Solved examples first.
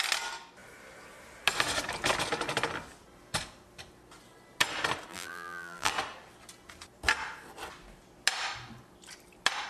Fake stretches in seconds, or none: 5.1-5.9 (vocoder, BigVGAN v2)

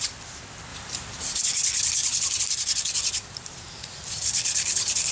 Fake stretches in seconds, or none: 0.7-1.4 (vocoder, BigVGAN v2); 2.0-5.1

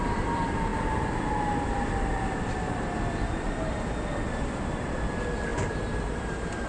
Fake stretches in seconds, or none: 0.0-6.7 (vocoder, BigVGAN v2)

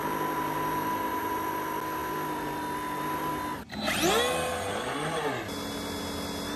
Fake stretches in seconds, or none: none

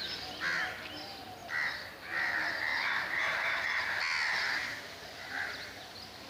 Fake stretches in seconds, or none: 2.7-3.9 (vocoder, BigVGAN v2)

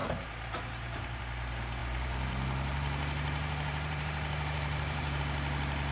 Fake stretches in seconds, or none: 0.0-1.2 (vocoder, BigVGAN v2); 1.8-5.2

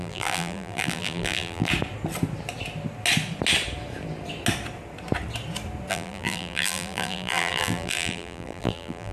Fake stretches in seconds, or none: 0.0-1.7 (vocoder, BigVGAN v2); 5.9-9.1